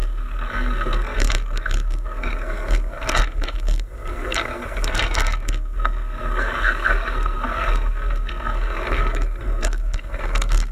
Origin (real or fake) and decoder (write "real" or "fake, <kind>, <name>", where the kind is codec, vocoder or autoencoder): fake, codec, SNAC